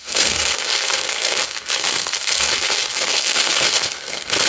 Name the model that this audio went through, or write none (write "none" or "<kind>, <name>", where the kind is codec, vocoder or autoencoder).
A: codec, SNAC